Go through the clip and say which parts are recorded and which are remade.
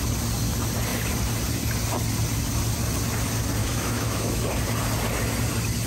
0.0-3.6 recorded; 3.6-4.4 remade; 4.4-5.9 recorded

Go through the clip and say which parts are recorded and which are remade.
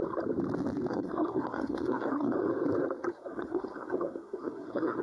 0.0-0.9 recorded; 0.9-2.5 remade; 2.5-3.1 recorded; 3.1-5.0 remade